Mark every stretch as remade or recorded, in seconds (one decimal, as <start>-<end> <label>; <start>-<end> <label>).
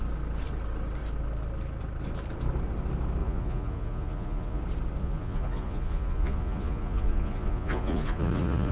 0.0-3.2 recorded; 3.2-4.6 remade; 4.6-5.0 recorded; 5.0-8.7 remade